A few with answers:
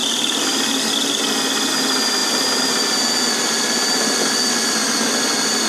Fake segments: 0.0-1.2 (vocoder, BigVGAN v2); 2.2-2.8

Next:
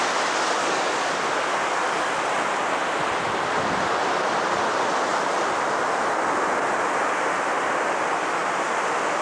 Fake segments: 0.6-2.1 (codec, DAC)

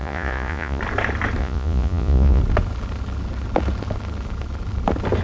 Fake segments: 0.0-0.8 (vocoder, Vocos); 1.4-2.4

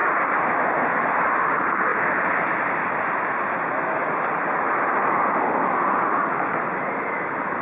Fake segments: none

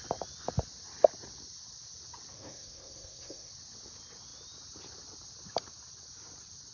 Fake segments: 2.3-3.5 (codec, SNAC)